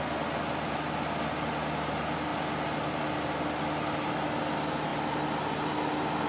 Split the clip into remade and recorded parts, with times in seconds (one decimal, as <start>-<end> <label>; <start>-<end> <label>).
0.0-6.3 recorded